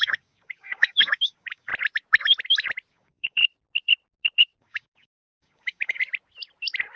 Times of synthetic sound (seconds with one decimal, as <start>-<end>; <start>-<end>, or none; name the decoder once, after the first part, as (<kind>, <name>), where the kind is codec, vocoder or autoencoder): 0.0-1.7 (codec, DAC); 2.9-3.4; 4.6-6.0